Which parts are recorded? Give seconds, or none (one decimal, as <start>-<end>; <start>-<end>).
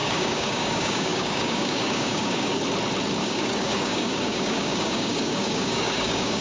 2.6-3.2